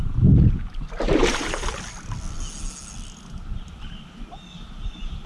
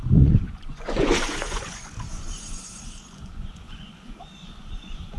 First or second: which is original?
first